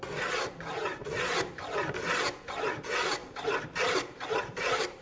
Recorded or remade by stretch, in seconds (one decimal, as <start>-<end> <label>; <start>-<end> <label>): 0.0-5.0 remade